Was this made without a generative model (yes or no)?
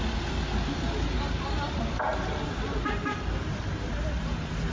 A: yes